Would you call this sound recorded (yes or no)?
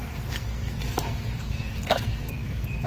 no